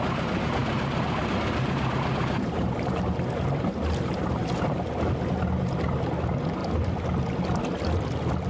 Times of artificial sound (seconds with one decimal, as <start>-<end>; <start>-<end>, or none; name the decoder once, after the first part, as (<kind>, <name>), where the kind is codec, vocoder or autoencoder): 0.6-4.9 (vocoder, BigVGAN v2)